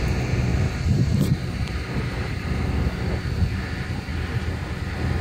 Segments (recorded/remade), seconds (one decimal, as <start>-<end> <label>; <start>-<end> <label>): 0.0-0.5 recorded; 0.5-3.6 remade; 3.6-4.1 recorded; 4.1-4.8 remade; 4.8-5.2 recorded